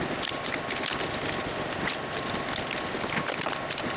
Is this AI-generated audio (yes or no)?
no